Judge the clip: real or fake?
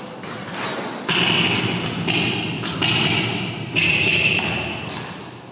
real